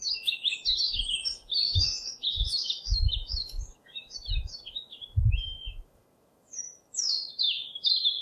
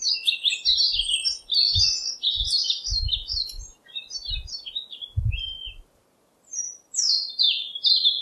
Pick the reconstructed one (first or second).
first